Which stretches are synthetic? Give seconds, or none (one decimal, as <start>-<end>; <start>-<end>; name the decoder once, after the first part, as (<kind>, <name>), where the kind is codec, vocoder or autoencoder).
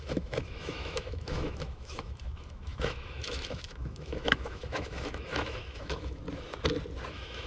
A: 0.0-6.2 (autoencoder, DAC-VAE); 7.1-7.5